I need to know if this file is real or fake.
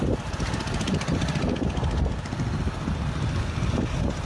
real